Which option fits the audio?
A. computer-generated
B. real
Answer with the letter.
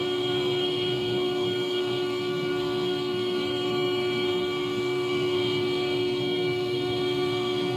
A